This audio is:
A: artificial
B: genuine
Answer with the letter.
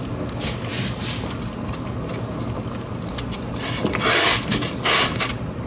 B